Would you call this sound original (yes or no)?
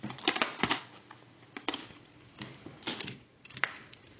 yes